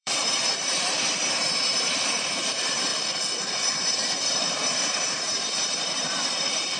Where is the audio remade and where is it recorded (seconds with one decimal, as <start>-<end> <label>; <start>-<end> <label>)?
0.0-2.9 remade; 2.9-4.3 recorded; 4.3-6.8 remade